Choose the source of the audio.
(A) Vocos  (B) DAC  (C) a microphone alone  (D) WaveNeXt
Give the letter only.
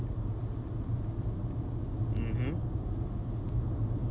C